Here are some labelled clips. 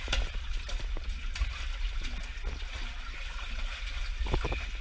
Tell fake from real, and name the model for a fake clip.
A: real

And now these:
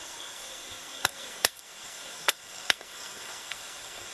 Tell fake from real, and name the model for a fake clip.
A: fake, codec, SNAC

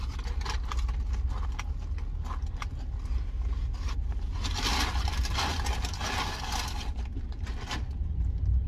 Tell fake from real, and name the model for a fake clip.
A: real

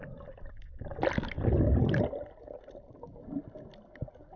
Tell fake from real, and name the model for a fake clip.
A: real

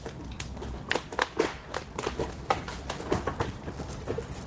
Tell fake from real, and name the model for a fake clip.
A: real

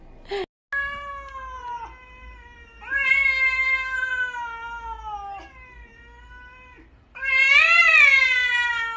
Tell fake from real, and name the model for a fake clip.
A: real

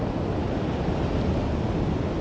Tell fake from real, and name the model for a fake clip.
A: real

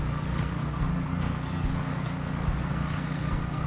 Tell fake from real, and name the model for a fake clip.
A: fake, codec, SNAC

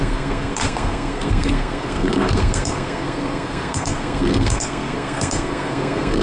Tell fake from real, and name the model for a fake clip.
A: fake, codec, SNAC